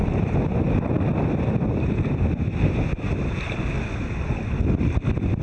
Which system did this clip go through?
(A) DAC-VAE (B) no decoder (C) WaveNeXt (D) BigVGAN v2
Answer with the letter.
B